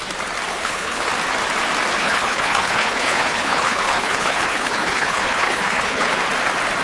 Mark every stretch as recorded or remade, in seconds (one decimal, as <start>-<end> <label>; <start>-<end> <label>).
0.0-0.5 recorded; 0.5-1.1 remade; 1.1-2.0 recorded; 2.0-6.1 remade; 6.1-6.8 recorded